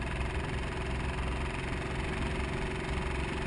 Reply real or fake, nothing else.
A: real